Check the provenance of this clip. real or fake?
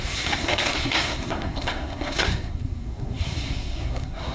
fake